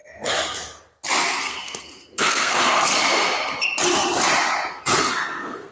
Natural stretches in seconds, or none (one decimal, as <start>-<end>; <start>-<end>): 0.0-1.4; 2.9-5.0